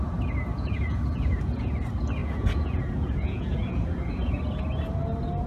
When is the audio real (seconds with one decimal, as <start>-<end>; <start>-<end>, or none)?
0.0-0.5; 1.7-2.2; 4.4-5.5